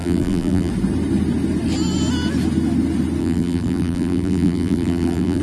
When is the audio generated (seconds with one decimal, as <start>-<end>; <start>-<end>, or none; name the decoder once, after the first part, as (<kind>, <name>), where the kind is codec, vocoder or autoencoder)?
0.0-0.7 (vocoder, BigVGAN v2); 3.2-5.4